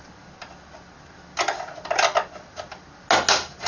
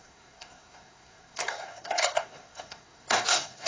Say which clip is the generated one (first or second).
second